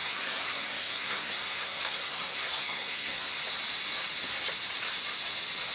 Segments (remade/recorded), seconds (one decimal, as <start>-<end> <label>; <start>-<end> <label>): 0.0-3.4 remade; 3.4-5.7 recorded